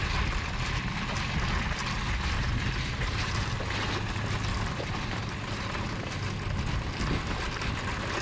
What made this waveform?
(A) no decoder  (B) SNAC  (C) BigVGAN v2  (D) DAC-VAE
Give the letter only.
A